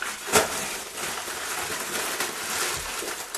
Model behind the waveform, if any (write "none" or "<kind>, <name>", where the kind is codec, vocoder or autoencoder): none